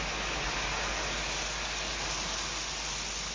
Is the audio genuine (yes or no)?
yes